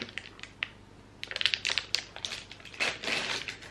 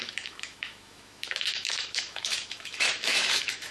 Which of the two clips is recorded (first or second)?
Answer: first